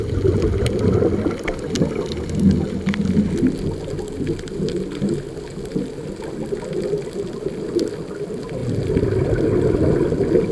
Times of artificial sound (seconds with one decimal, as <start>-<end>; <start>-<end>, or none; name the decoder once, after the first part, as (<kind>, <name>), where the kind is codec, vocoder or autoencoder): none